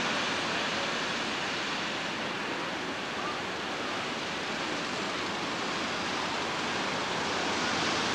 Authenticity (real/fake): real